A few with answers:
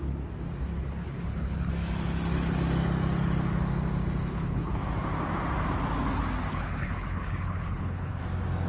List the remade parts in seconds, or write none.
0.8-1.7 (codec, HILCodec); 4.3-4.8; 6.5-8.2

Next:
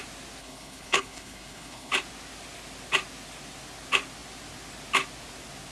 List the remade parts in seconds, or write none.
0.4-1.9 (codec, HILCodec)

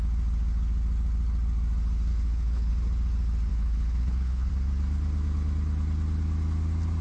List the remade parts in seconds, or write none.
2.1-2.7 (codec, HILCodec); 3.5-4.5

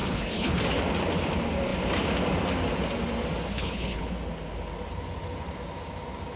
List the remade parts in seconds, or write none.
0.0-0.6 (codec, HILCodec); 3.5-4.1

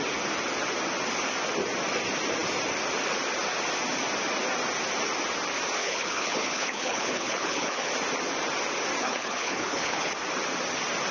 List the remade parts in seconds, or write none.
5.8-7.9 (codec, HILCodec); 9.0-10.1

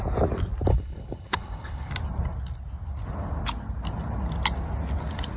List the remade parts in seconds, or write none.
0.7-1.9 (codec, HILCodec)

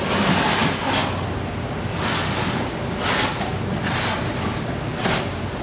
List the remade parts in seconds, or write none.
none